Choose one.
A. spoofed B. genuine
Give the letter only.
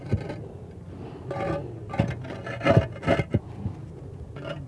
B